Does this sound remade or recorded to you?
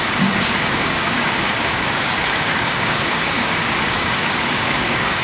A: remade